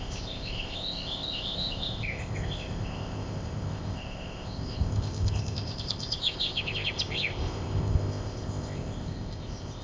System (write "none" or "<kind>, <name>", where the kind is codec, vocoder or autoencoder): codec, ZipCodec